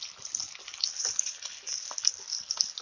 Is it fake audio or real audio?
real